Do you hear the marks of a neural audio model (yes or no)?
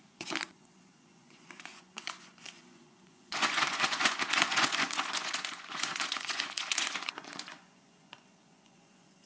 yes